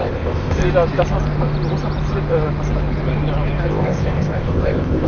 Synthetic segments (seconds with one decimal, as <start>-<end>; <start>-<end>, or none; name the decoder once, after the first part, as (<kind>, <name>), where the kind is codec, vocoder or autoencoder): 0.0-0.6 (codec, ZipCodec); 3.7-5.1